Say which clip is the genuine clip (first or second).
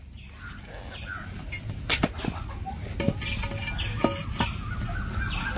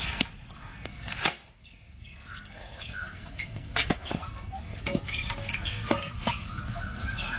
first